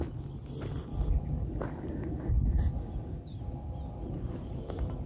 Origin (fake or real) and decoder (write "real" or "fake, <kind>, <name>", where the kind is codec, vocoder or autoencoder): real